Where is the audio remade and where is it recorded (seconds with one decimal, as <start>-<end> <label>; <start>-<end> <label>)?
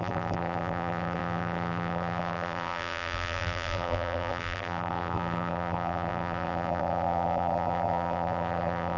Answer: 0.0-9.0 remade